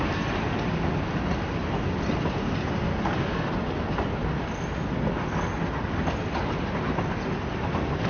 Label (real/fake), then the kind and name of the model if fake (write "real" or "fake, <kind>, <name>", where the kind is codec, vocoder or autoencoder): real